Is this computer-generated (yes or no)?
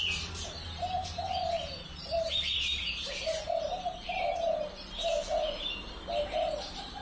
yes